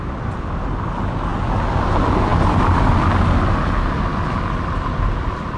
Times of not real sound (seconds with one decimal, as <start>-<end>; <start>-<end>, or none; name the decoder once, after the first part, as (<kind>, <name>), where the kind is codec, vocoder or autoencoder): none

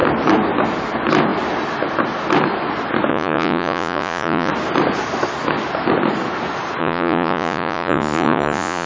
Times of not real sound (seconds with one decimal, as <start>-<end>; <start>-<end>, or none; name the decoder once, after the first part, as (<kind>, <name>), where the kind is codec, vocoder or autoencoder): 3.1-4.5 (vocoder, Vocos); 6.8-8.9

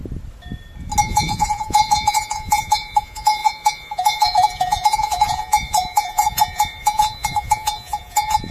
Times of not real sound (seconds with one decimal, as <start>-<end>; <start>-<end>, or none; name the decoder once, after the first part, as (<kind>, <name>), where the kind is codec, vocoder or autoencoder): 1.0-8.5 (vocoder, Vocos)

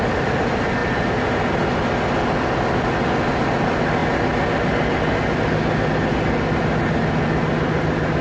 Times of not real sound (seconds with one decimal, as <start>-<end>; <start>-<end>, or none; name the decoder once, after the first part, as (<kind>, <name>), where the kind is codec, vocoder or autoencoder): none

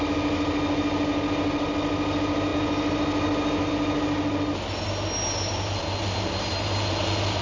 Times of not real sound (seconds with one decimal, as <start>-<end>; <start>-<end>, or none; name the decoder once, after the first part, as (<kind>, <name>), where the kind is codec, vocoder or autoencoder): none

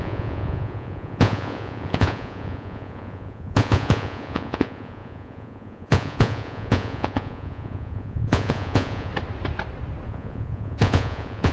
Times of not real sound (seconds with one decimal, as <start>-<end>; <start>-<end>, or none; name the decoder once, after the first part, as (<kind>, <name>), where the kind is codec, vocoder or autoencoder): 0.0-9.1 (vocoder, Vocos); 10.1-11.5

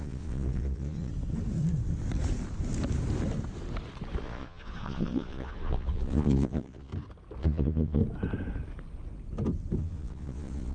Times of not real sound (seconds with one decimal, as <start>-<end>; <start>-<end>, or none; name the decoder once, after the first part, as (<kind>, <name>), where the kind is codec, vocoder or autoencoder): 0.0-1.1 (vocoder, Vocos); 4.2-6.9; 7.4-8.0; 9.8-10.7

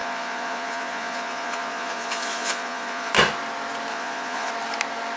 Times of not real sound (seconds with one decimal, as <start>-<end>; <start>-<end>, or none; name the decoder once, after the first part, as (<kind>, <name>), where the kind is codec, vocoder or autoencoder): 0.0-3.1 (vocoder, Vocos); 3.9-4.5